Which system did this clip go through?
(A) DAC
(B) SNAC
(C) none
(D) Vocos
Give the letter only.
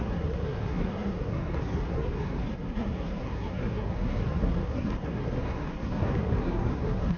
B